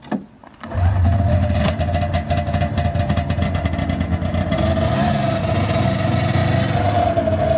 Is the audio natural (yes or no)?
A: yes